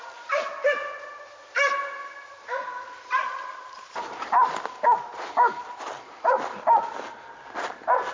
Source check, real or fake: real